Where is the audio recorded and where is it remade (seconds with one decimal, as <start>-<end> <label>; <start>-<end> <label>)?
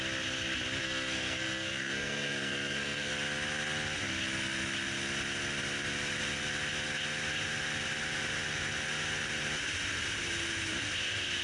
0.0-0.8 recorded; 0.8-3.1 remade; 3.1-11.4 recorded